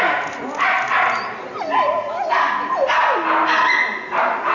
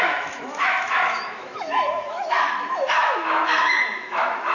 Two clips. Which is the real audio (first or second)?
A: first